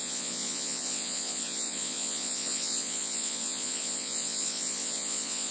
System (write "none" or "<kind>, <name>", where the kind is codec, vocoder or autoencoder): vocoder, Vocos